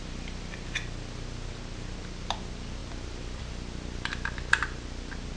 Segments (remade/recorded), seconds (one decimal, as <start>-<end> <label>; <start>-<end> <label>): 0.0-5.4 recorded